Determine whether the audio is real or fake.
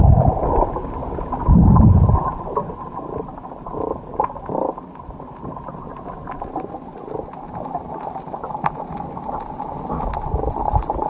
real